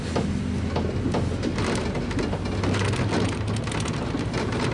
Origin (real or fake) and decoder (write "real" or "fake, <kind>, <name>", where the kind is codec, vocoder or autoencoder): real